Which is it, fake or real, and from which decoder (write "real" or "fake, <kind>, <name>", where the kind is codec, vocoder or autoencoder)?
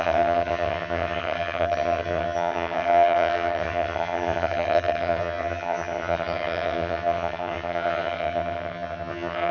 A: fake, vocoder, HiFi-GAN